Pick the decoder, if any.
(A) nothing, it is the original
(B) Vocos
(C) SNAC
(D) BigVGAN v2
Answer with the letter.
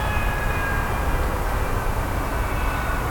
A